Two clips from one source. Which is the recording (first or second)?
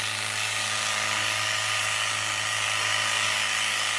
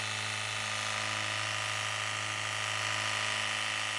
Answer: second